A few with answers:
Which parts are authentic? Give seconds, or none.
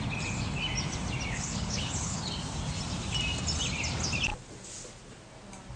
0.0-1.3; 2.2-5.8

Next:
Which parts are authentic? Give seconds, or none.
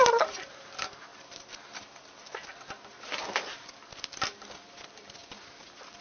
0.0-6.0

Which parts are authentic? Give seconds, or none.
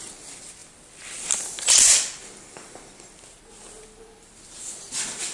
0.0-5.3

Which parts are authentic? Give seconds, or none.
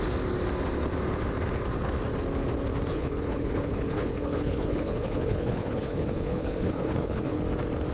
0.0-2.9; 7.4-7.9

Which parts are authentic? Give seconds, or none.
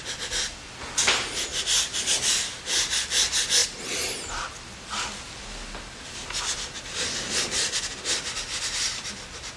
0.0-9.6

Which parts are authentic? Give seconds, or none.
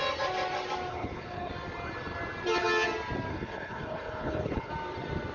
0.0-0.9; 1.5-3.3; 4.7-5.3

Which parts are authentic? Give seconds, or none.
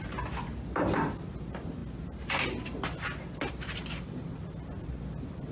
0.0-5.5